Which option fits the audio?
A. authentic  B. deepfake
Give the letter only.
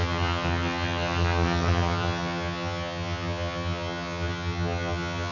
B